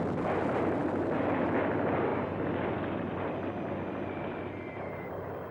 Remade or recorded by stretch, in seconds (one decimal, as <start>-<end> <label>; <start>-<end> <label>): 0.0-5.5 recorded